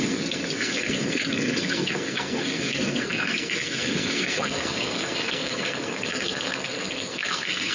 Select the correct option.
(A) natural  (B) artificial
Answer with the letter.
B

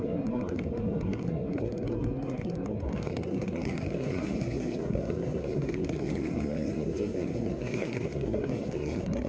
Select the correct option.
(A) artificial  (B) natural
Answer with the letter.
A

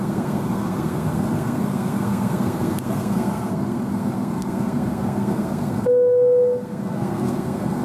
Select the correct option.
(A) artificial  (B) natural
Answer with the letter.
A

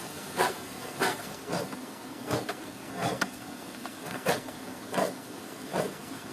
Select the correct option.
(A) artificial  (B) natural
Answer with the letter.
A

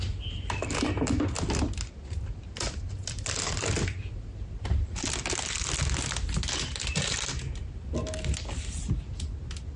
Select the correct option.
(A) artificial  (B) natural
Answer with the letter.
B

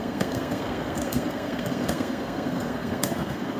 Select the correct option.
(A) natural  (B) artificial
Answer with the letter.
B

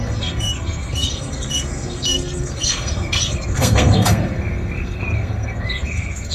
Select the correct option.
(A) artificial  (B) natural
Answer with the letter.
A